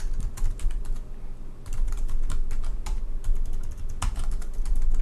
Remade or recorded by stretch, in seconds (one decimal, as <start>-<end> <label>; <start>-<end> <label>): 0.0-5.0 recorded